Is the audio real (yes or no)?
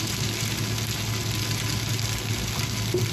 yes